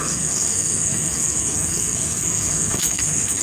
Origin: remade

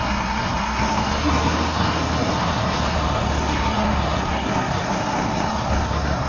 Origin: remade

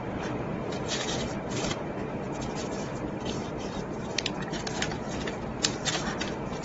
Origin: remade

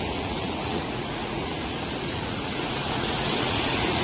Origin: remade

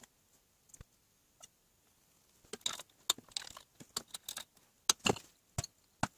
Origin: recorded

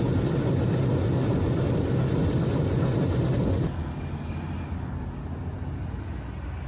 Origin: recorded